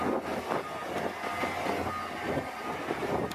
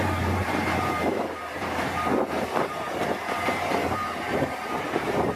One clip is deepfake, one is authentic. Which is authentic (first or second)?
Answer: first